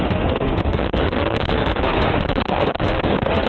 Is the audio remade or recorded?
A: remade